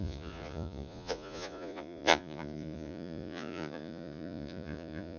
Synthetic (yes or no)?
yes